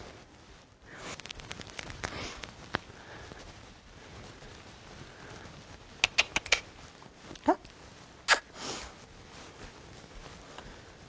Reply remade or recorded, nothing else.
recorded